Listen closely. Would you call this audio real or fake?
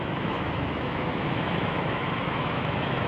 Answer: fake